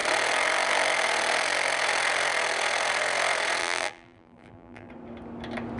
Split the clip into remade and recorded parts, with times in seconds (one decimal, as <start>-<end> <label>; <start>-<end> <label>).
0.0-3.6 recorded; 3.6-4.9 remade; 4.9-5.8 recorded